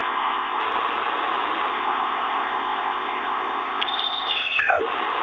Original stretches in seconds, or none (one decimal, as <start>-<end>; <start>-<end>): 0.6-1.7; 4.8-5.2

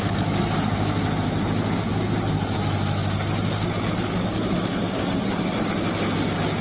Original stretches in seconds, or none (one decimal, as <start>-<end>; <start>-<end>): 0.0-6.6

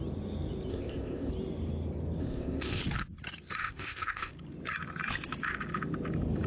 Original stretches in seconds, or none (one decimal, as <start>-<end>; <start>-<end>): 0.0-0.7; 1.3-2.2; 2.8-3.6; 4.3-6.5

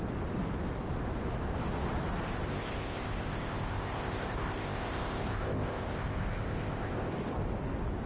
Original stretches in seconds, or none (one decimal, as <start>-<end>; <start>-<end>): 0.0-2.5; 7.1-8.1

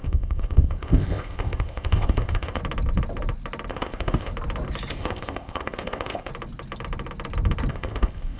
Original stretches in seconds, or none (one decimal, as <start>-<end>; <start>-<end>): 2.6-3.7; 4.3-4.9; 6.3-7.7